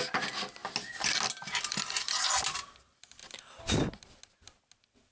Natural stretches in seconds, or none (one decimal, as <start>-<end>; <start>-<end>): 0.0-5.1